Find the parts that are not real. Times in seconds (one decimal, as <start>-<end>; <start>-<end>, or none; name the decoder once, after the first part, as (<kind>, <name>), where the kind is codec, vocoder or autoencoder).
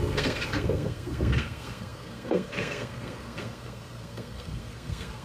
0.0-5.2 (codec, SNAC)